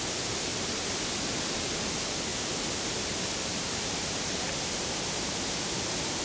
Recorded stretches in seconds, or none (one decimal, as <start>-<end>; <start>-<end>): 0.0-0.5; 1.3-2.3